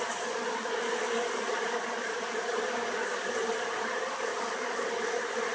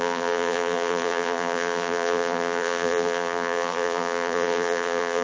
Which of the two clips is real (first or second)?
first